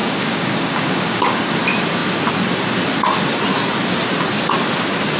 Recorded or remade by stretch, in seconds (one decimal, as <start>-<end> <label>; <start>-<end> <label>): 0.0-1.5 remade; 1.5-5.2 recorded